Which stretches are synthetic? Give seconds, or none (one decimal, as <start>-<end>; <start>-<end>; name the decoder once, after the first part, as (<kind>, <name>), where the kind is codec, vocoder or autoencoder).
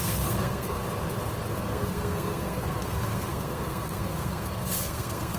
0.0-0.8 (codec, SNAC); 1.5-5.4